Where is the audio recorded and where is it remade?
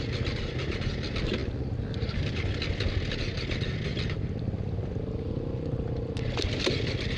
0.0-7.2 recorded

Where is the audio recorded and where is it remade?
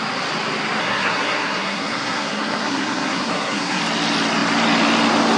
0.0-0.8 recorded; 0.8-3.8 remade; 3.8-5.4 recorded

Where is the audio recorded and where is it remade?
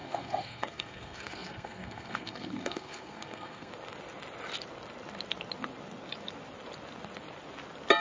0.0-3.7 remade; 3.7-8.0 recorded